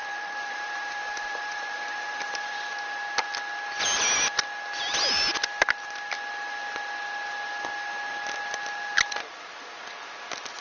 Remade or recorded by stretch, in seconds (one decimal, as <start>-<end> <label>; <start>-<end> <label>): 0.0-2.7 remade; 2.7-10.6 recorded